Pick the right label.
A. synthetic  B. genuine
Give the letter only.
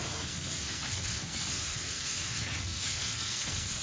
A